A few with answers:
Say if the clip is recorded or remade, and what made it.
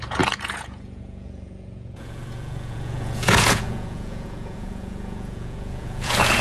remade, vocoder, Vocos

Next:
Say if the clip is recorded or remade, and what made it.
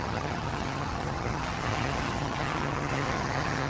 remade, vocoder, HiFi-GAN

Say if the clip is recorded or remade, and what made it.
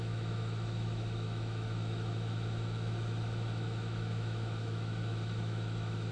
remade, autoencoder, DAC-VAE